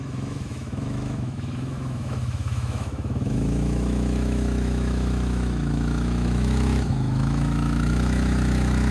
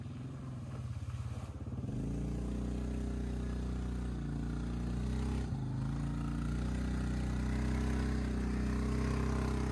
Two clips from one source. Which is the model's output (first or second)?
first